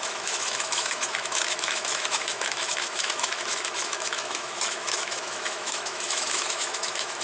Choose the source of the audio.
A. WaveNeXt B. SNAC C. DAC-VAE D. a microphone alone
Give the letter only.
C